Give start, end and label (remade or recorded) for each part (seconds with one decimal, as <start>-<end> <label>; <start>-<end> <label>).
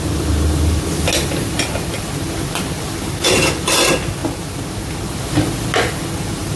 0.0-6.6 recorded